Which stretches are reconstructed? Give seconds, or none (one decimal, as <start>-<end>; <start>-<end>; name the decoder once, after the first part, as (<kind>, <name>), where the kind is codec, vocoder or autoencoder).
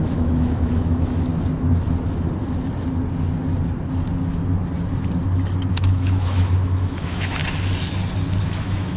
0.0-1.3 (autoencoder, DAC-VAE); 5.7-7.4; 8.4-9.0